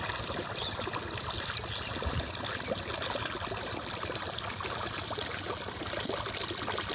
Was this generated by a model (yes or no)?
no